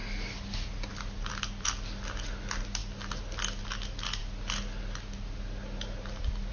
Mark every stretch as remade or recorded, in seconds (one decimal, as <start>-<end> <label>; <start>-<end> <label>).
0.0-6.5 recorded